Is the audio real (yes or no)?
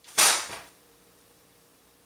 no